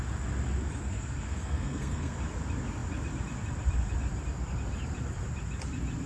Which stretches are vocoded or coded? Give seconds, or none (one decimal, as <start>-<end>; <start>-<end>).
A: 0.8-2.1